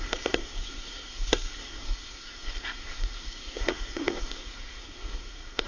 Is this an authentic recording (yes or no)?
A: no